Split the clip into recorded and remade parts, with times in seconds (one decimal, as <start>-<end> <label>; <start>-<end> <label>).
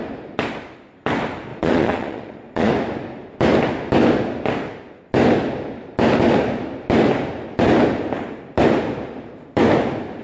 0.0-1.5 recorded; 1.5-2.7 remade; 2.7-10.2 recorded